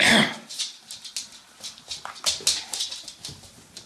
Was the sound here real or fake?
real